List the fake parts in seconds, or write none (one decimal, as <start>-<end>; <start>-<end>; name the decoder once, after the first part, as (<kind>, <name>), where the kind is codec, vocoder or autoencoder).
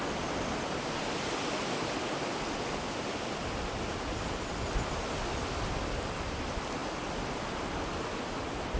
none